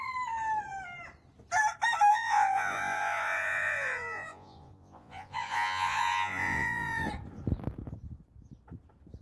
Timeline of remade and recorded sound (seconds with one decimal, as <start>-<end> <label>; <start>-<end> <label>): 0.0-2.1 recorded; 2.1-7.1 remade; 7.1-9.2 recorded

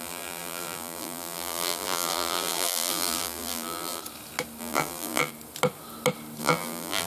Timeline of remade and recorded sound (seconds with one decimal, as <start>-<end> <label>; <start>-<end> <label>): 0.0-4.0 remade; 4.0-4.6 recorded; 4.6-5.3 remade; 5.3-6.4 recorded; 6.4-7.1 remade

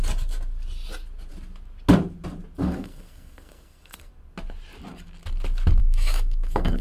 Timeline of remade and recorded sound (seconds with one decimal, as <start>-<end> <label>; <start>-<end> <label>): 0.0-2.6 recorded; 2.6-4.1 remade; 4.1-5.8 recorded; 5.8-6.8 remade

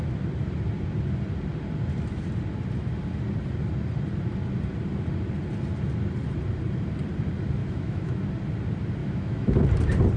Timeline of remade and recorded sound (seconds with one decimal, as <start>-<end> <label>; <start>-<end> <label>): 0.0-7.6 recorded; 7.6-8.2 remade; 8.2-9.0 recorded; 9.0-9.6 remade; 9.6-10.2 recorded

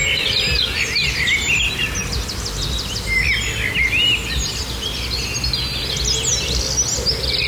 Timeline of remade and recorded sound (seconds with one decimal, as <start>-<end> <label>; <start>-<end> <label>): 0.0-7.5 recorded

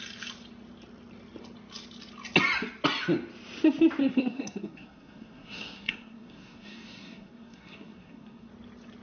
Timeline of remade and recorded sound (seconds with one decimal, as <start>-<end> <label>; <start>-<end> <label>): 0.0-4.0 recorded; 4.0-8.5 remade; 8.5-9.0 recorded